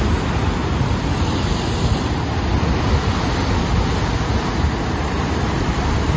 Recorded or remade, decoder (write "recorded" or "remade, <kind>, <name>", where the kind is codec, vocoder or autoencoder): recorded